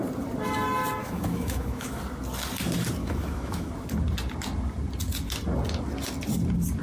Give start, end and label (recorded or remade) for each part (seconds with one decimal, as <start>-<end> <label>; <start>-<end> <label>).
0.0-1.0 recorded; 1.0-2.0 remade; 2.0-3.0 recorded; 3.0-3.7 remade; 3.7-6.8 recorded